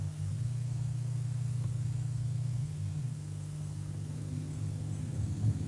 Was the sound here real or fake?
fake